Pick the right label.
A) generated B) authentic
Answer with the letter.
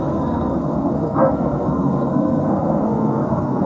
A